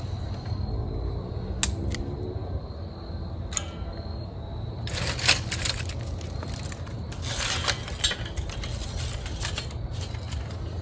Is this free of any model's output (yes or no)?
yes